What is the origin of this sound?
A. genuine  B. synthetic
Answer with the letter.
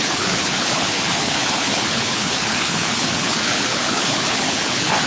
B